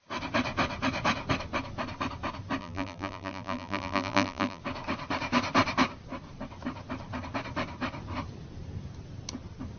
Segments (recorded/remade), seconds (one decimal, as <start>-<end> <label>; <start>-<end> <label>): 0.0-2.6 recorded; 2.6-4.6 remade; 4.6-9.8 recorded